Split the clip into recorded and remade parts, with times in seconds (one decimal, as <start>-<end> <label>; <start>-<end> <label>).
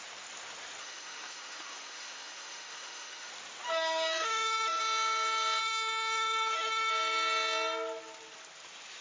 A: 0.0-0.8 recorded; 0.8-3.3 remade; 3.3-4.1 recorded; 4.1-4.8 remade; 4.8-5.6 recorded; 5.6-6.9 remade; 6.9-9.0 recorded